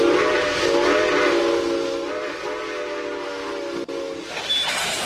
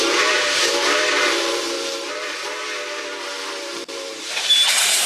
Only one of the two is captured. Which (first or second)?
first